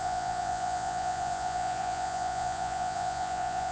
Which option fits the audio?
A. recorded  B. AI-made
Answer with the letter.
B